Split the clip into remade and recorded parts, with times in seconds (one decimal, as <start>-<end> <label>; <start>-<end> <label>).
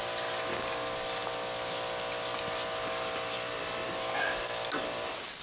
0.0-5.4 recorded